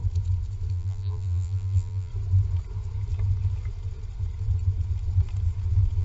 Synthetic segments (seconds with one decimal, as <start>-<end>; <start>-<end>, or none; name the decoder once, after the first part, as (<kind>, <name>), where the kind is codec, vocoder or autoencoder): 0.7-2.1 (vocoder, BigVGAN v2)